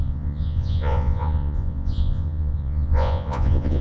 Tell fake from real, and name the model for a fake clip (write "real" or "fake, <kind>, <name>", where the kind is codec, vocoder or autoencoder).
fake, vocoder, Vocos